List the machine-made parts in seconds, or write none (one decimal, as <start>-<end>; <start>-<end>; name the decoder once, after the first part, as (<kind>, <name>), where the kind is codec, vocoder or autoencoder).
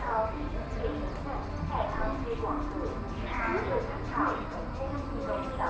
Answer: none